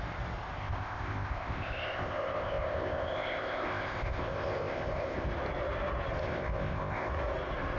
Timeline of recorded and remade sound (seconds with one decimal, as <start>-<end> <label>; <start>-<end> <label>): 0.0-0.6 recorded; 0.6-5.3 remade; 5.3-6.2 recorded; 6.2-7.1 remade; 7.1-7.8 recorded